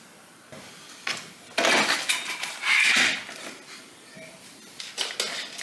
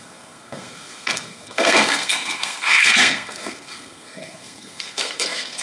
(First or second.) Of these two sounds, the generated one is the second